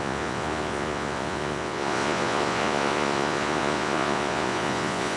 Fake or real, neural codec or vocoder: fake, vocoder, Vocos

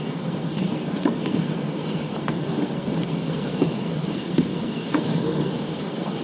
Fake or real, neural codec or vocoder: fake, codec, SNAC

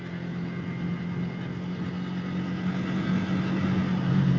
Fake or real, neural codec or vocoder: real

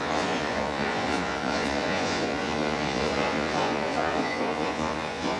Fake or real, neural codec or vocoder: fake, vocoder, Vocos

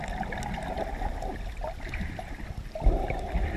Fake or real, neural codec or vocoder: real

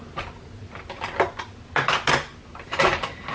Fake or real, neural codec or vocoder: real